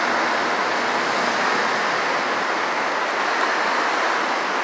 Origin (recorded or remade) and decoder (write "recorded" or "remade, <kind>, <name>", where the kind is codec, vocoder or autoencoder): recorded